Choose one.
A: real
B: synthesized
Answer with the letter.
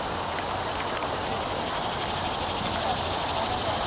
A